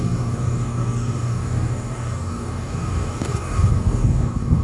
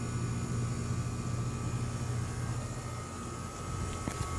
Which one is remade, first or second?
first